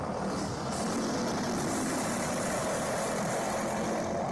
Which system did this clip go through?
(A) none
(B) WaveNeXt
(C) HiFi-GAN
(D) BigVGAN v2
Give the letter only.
A